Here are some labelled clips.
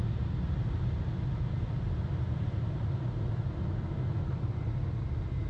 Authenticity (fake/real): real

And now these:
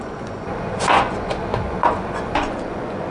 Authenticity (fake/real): fake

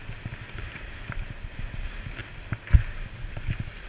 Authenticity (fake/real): real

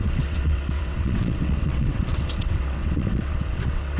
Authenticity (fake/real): fake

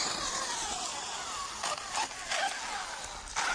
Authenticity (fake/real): real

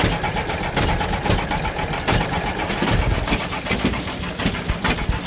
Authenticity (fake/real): real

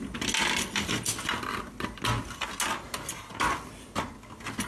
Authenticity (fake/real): real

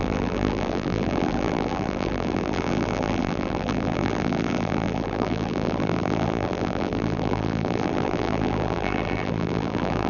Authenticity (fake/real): fake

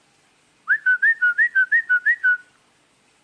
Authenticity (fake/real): real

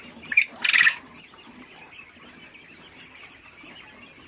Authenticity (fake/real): real